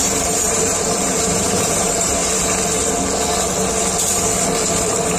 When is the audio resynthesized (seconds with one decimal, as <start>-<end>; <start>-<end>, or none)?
0.0-2.2; 4.7-5.2